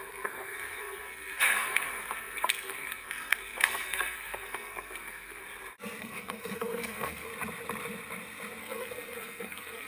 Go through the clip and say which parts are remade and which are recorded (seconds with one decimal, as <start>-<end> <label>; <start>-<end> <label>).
0.0-5.4 remade; 5.4-6.0 recorded; 6.0-7.3 remade; 7.3-8.6 recorded; 8.6-9.9 remade